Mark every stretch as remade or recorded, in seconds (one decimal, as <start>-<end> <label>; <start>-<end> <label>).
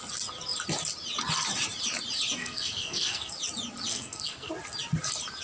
0.0-2.4 recorded; 2.4-3.3 remade; 3.3-3.9 recorded; 3.9-4.5 remade; 4.5-5.4 recorded